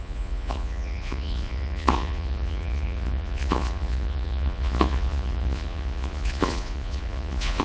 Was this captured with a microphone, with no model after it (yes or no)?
no